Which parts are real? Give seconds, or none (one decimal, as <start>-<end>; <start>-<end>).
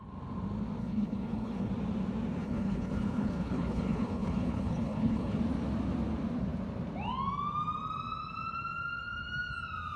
0.0-0.8; 1.7-2.4; 5.4-10.0